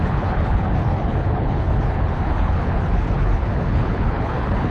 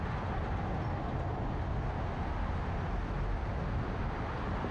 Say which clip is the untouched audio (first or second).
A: second